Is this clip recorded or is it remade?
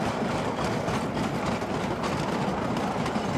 recorded